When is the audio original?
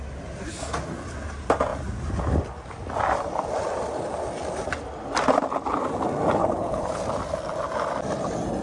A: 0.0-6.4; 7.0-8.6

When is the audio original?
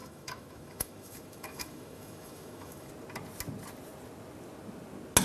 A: 2.9-5.2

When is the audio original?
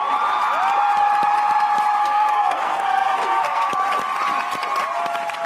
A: 0.0-2.0; 3.7-5.5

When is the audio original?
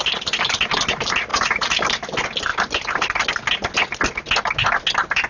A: 0.0-1.3; 1.8-5.3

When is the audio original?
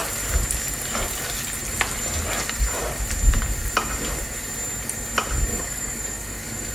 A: 0.0-5.5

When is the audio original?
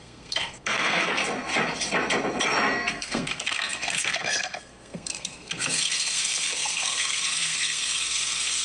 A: 1.2-2.9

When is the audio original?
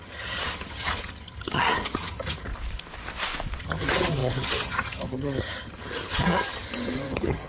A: 2.5-3.6